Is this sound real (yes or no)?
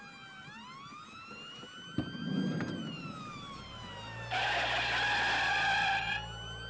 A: no